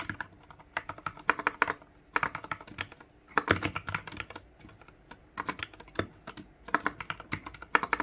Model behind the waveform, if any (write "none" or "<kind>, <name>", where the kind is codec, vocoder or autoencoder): none